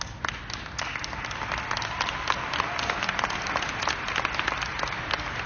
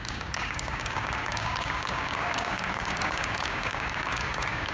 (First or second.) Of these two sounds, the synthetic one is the second